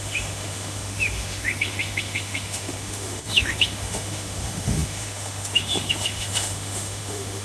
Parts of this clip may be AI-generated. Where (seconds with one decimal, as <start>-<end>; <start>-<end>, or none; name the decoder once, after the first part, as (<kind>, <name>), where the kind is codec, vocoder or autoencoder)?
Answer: 0.0-7.4 (autoencoder, DAC-VAE)